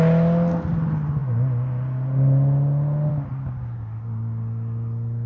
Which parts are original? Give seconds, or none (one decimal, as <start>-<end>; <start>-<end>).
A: 0.0-5.3